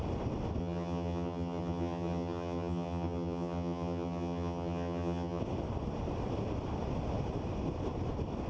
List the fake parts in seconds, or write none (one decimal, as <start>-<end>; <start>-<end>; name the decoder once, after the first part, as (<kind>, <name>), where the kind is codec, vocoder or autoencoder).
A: 0.6-5.4 (vocoder, HiFi-GAN)